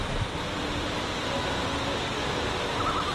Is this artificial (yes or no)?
no